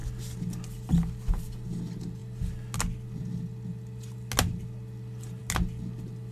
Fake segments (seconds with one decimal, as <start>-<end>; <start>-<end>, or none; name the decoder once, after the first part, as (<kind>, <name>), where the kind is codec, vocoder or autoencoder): none